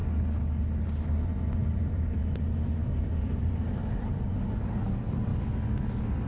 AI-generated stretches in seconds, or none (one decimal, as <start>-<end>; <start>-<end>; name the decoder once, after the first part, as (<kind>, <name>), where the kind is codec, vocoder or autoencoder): 1.2-5.3 (vocoder, BigVGAN v2)